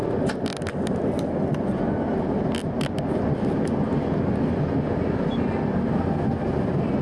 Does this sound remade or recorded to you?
recorded